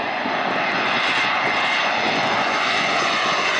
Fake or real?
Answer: fake